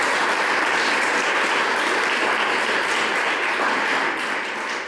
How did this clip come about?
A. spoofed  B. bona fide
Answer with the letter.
B